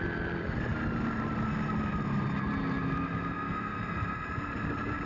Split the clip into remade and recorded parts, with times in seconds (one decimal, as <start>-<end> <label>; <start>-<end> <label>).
0.0-5.1 recorded